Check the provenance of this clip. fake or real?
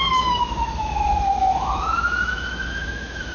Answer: fake